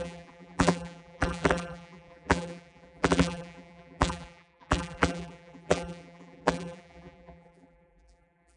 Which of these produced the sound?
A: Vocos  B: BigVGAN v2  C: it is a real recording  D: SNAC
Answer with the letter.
B